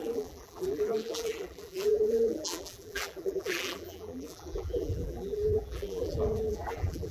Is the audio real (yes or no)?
no